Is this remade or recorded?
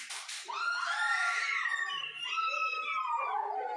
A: remade